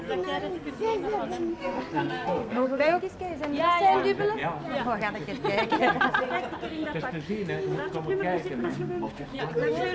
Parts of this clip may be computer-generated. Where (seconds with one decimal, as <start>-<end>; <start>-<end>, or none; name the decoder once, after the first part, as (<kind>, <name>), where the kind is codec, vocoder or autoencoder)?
1.5-3.0 (codec, SNAC); 8.6-9.4